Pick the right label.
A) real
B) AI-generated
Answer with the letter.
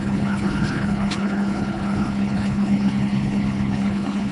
B